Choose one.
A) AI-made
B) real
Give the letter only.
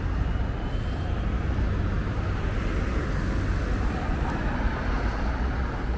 B